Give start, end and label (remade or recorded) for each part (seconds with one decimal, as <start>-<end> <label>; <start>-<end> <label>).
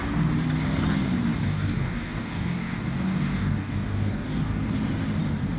0.0-1.4 recorded; 1.4-4.7 remade; 4.7-5.6 recorded